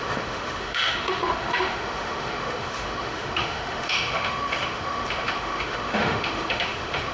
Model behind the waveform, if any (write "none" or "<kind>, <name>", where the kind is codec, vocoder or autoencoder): autoencoder, DAC-VAE